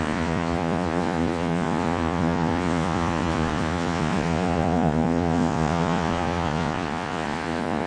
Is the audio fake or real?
fake